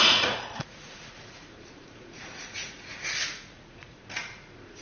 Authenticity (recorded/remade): remade